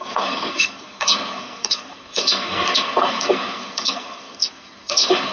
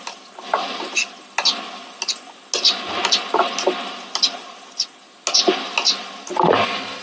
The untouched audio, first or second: second